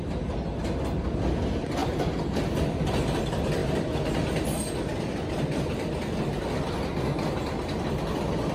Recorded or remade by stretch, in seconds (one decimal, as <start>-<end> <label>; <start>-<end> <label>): 0.0-8.5 recorded